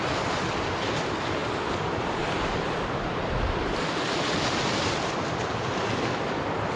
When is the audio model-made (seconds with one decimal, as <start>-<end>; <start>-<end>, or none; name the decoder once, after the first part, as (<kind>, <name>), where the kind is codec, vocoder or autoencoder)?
none